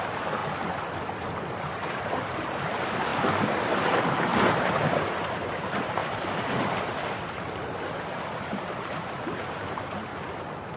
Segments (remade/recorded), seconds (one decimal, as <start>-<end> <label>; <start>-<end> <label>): 0.0-0.4 remade; 0.4-1.7 recorded; 1.7-3.1 remade; 3.1-4.9 recorded; 4.9-6.0 remade; 6.0-8.0 recorded; 8.0-10.1 remade; 10.1-10.8 recorded